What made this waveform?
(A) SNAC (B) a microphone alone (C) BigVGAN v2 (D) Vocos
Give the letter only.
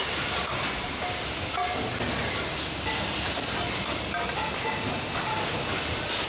B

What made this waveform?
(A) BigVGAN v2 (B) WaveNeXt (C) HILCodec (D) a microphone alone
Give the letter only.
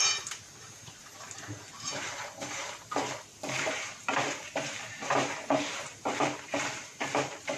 A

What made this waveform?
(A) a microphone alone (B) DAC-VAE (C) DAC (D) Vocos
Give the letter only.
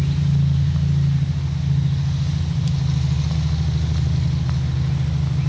A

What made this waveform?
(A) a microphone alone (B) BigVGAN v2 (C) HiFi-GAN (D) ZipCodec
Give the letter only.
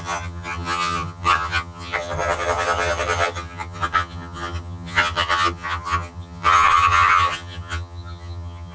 C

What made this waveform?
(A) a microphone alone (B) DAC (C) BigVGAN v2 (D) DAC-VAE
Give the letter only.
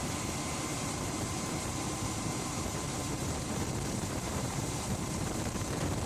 C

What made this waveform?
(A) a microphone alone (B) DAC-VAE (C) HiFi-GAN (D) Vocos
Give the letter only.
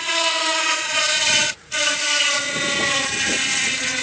D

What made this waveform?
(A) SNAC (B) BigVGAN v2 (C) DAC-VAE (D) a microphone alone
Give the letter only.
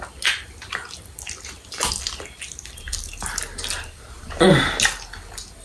D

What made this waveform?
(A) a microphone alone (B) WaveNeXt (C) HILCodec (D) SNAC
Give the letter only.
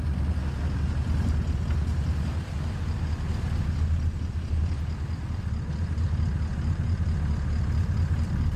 A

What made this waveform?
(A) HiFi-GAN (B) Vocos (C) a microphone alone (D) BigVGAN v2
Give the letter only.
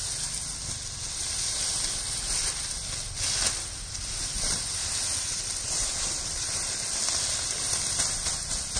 C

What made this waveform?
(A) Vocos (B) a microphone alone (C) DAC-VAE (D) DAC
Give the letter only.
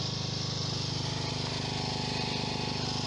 B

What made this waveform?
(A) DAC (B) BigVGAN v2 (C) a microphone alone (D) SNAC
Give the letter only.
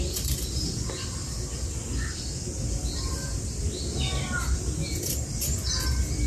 C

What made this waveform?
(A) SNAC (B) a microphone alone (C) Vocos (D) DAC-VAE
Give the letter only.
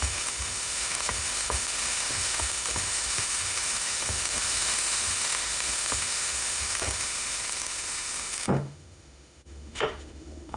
D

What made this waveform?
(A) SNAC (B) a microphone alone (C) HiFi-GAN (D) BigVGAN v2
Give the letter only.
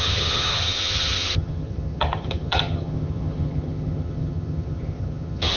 C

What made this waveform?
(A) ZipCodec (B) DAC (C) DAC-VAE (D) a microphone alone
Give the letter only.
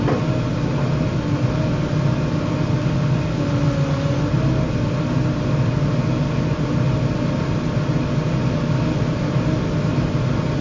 D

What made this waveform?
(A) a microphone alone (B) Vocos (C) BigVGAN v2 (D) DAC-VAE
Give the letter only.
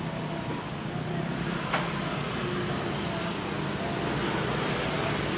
A